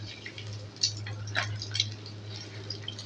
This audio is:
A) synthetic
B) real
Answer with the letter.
B